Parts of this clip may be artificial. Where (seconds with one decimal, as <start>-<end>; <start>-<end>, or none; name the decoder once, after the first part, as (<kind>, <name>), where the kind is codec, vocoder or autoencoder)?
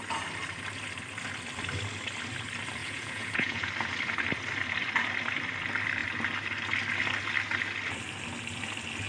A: 2.8-3.7 (vocoder, Vocos)